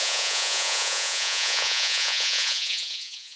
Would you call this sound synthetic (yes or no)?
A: yes